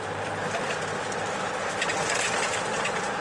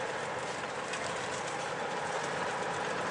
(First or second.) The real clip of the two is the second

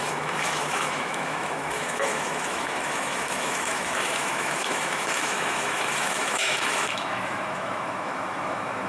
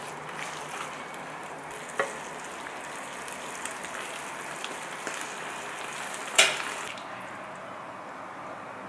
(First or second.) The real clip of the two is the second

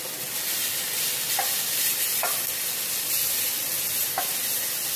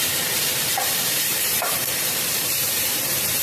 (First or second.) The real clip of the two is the first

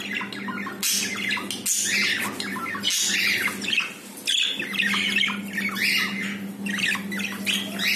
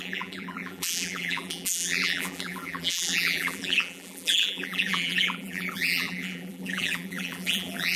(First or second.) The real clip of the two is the first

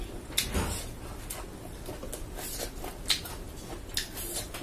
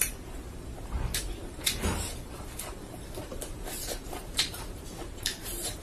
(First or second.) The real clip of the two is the first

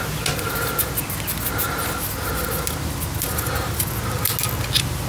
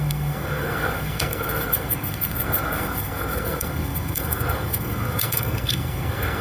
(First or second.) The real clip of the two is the first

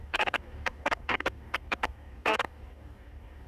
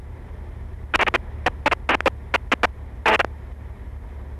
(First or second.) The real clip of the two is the second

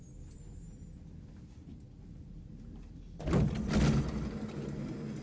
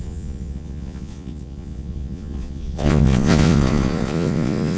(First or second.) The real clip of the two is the first